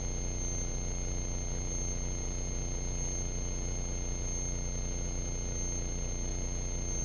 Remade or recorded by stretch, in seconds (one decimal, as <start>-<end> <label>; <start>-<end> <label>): 0.0-7.0 recorded